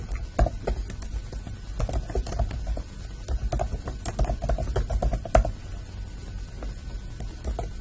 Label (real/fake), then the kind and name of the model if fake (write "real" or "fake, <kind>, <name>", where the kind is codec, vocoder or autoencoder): real